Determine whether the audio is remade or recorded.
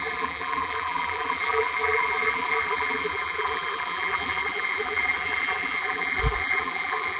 remade